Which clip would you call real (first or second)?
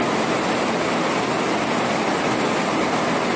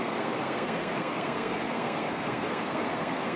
first